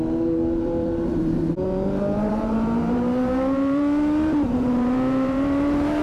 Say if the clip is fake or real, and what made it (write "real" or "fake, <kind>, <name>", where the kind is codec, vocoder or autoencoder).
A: fake, vocoder, BigVGAN v2